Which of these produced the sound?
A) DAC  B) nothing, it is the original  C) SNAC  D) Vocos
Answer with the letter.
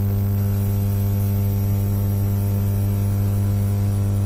B